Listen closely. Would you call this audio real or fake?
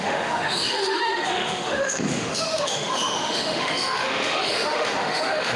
fake